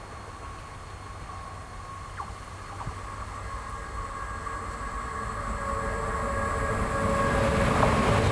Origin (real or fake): real